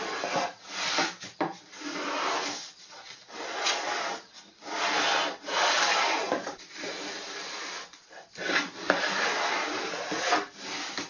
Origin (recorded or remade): recorded